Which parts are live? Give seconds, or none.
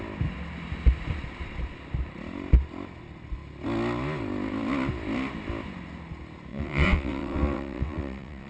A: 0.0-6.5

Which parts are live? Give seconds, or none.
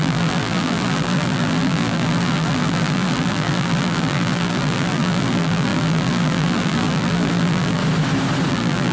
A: 7.8-8.5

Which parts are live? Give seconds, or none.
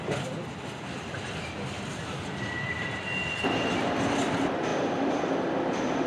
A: 0.0-4.7; 5.3-6.1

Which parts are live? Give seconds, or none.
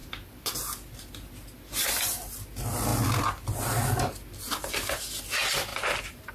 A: 0.0-5.7